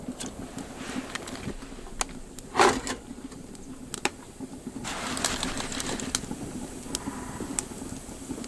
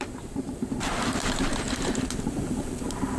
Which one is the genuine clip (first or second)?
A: first